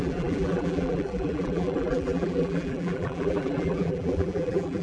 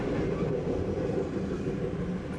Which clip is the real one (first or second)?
second